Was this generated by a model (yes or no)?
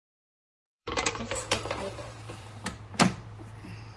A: yes